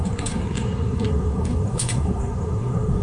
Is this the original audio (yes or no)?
no